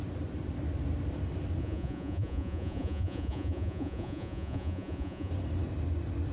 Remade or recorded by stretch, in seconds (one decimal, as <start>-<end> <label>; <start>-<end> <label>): 0.0-1.6 recorded; 1.6-5.3 remade; 5.3-6.3 recorded